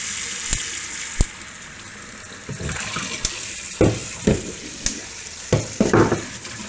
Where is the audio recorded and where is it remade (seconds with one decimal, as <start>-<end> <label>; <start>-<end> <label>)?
0.0-6.7 recorded